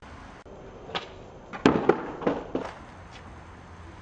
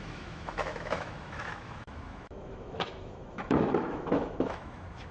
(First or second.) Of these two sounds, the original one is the first